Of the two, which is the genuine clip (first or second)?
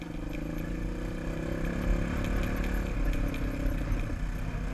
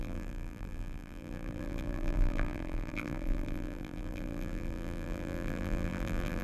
first